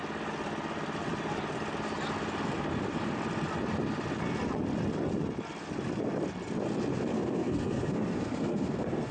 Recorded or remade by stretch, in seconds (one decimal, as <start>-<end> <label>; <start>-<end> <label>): 0.0-7.1 recorded; 7.1-9.1 remade